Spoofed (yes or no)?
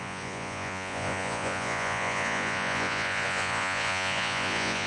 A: yes